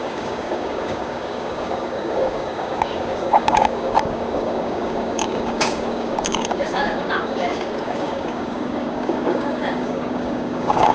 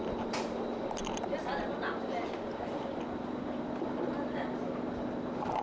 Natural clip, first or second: second